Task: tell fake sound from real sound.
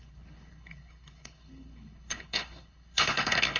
fake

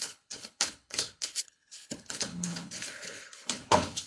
fake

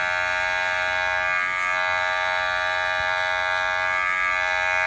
real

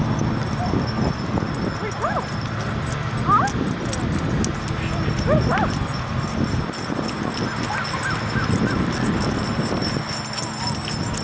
real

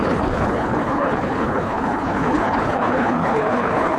fake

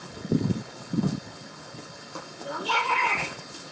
fake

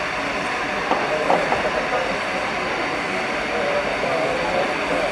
real